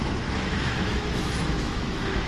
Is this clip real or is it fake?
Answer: fake